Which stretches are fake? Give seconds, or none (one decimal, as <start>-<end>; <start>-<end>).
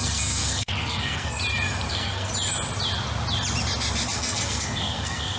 0.0-1.4; 1.9-2.3; 4.1-5.4